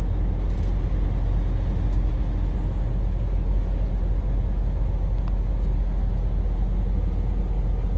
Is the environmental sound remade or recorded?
recorded